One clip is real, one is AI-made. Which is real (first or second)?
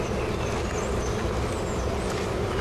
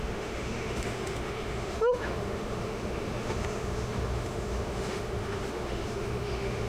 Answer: first